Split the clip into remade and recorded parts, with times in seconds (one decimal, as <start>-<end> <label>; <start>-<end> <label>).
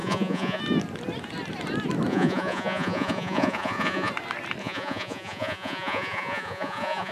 0.0-0.6 remade; 0.6-2.1 recorded; 2.1-4.1 remade; 4.1-4.6 recorded; 4.6-7.1 remade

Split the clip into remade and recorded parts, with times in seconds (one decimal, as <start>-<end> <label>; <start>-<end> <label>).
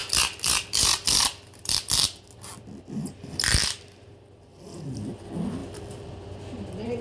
0.0-2.2 remade; 2.2-5.6 recorded; 5.6-6.4 remade; 6.4-7.0 recorded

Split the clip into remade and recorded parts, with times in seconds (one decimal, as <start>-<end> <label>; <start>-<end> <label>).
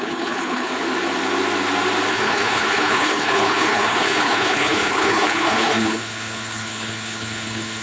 0.0-0.7 remade; 0.7-2.1 recorded; 2.1-7.8 remade